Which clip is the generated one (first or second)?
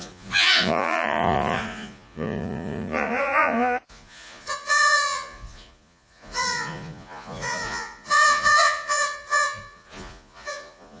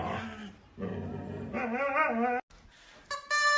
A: first